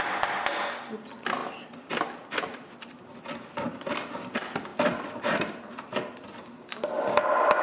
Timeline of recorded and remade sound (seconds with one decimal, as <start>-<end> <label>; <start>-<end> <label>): 0.0-7.6 recorded